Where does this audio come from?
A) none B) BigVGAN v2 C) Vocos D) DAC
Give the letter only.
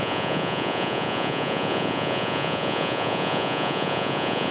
C